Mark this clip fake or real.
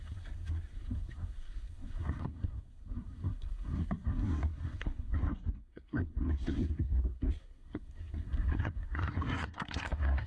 fake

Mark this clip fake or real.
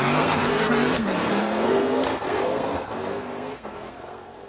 fake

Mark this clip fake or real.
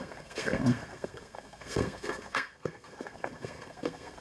fake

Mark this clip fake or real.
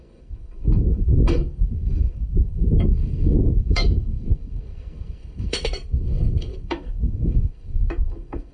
fake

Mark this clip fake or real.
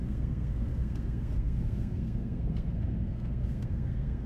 fake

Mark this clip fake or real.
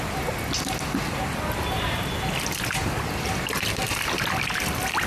real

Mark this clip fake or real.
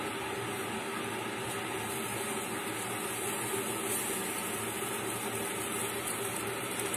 real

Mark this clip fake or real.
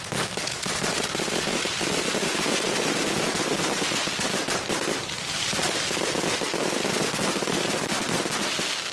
real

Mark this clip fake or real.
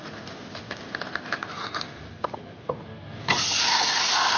real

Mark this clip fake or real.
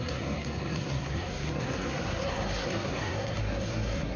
fake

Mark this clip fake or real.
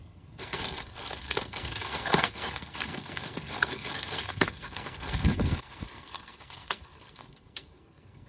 fake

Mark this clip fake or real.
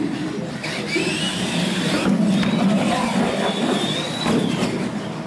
real